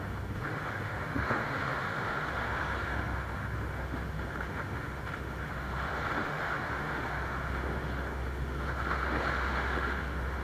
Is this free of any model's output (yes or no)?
no